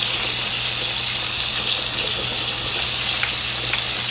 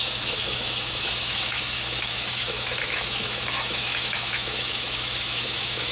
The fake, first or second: second